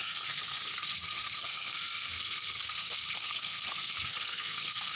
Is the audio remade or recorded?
remade